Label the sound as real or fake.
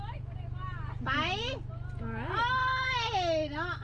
real